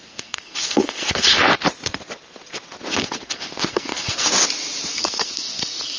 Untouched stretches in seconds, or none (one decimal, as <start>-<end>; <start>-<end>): 1.5-2.9; 4.3-4.9